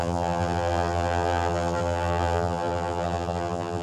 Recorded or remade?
remade